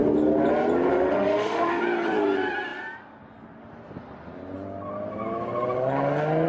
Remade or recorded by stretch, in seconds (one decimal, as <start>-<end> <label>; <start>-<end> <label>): 0.0-0.9 recorded; 0.9-1.8 remade; 1.8-6.5 recorded